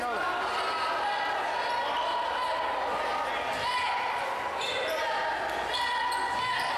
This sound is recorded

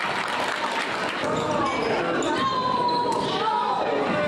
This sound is recorded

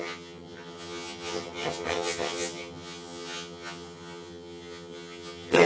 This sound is remade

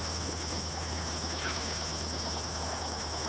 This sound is remade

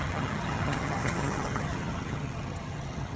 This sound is remade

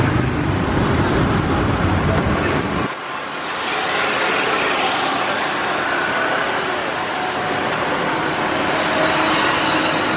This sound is recorded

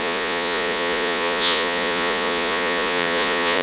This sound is remade